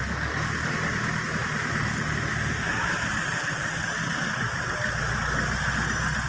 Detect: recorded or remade recorded